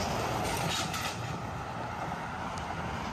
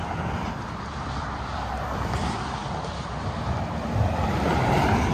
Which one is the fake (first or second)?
second